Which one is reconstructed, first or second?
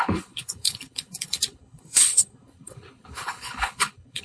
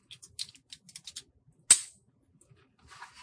first